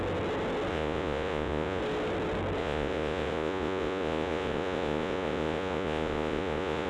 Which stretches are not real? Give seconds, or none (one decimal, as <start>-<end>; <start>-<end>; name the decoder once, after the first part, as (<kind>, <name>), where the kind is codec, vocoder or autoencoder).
0.7-1.8 (vocoder, Vocos); 2.6-6.9